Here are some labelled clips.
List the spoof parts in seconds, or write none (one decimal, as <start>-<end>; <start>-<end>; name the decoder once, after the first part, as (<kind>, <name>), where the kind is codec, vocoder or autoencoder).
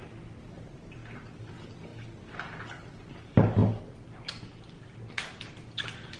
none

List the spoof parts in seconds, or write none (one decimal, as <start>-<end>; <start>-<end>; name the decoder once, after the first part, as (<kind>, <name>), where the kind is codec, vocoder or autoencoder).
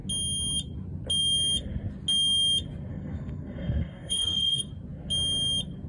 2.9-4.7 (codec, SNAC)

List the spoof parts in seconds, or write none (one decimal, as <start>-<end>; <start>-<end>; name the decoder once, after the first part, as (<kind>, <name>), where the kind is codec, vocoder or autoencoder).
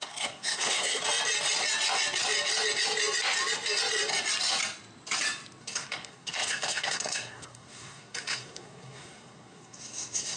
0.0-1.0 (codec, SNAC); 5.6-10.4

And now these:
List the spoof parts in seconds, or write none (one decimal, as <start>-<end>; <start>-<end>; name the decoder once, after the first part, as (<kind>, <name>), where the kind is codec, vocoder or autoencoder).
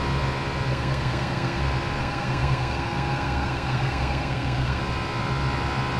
0.7-1.6 (codec, SNAC); 2.0-4.8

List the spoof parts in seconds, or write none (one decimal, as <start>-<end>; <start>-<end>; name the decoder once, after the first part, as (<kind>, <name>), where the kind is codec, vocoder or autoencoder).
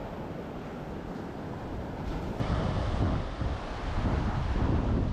none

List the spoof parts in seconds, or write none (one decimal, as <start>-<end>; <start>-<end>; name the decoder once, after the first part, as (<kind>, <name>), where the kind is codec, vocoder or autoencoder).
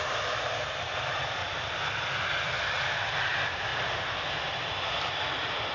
none